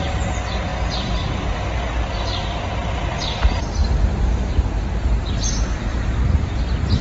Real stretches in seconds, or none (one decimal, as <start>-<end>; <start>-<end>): 0.0-3.8; 4.5-5.9; 6.6-7.0